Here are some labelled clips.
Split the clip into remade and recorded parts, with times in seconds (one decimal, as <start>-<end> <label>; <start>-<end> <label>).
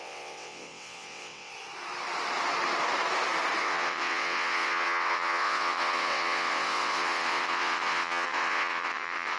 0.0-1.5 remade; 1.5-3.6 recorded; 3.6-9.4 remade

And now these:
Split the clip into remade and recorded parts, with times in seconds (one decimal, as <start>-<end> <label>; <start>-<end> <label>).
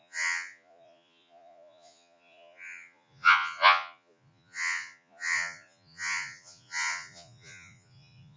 0.0-8.4 remade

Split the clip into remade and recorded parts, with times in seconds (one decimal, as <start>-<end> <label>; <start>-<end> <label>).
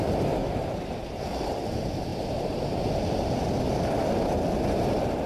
0.0-0.4 recorded; 0.4-1.2 remade; 1.2-2.1 recorded; 2.1-2.6 remade; 2.6-5.3 recorded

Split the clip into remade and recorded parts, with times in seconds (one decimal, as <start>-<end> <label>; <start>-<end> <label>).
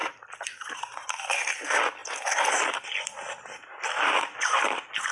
0.0-2.0 remade; 2.0-2.7 recorded; 2.7-5.1 remade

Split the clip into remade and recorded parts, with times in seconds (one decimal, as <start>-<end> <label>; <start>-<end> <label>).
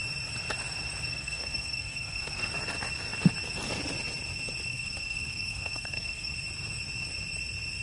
0.0-1.1 recorded; 1.1-2.5 remade; 2.5-4.7 recorded; 4.7-6.3 remade; 6.3-7.8 recorded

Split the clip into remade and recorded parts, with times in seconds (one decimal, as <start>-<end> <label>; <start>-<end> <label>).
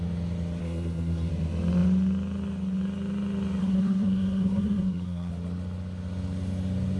0.0-0.6 recorded; 0.6-1.3 remade; 1.3-3.6 recorded; 3.6-5.3 remade; 5.3-7.0 recorded